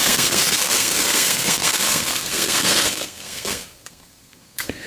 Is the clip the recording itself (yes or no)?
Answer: no